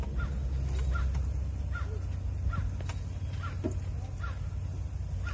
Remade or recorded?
recorded